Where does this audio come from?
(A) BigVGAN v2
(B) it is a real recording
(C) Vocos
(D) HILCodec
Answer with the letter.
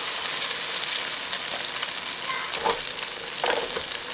B